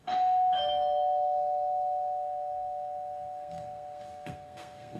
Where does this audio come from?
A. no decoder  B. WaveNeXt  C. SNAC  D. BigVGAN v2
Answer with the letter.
C